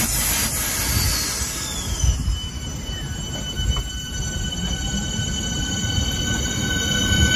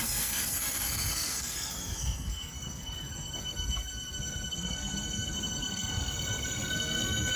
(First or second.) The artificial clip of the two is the second